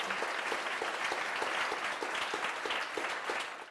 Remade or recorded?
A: recorded